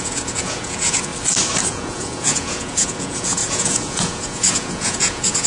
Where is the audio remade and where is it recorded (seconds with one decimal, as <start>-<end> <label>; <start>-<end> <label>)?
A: 0.0-1.1 remade; 1.1-1.7 recorded; 1.7-5.5 remade